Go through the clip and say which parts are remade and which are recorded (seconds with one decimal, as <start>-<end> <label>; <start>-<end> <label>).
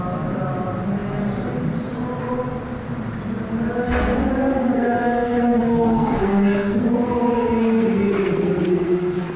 0.0-4.6 recorded; 4.6-9.4 remade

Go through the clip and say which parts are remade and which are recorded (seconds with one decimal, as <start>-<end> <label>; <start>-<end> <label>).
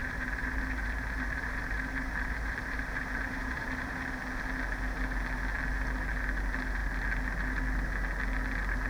0.0-4.2 remade; 4.2-8.9 recorded